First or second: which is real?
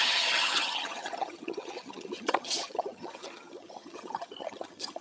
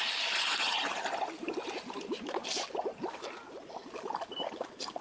second